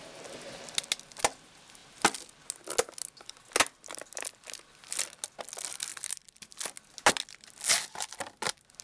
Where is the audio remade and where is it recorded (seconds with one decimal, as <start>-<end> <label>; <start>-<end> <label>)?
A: 0.0-8.8 recorded